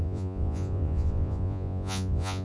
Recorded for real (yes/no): no